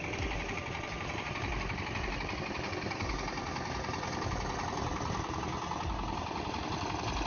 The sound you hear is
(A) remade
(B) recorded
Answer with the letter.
B